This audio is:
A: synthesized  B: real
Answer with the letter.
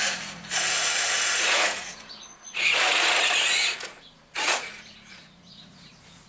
A